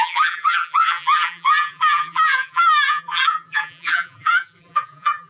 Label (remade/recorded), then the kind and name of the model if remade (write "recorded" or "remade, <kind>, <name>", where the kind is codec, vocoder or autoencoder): remade, vocoder, BigVGAN v2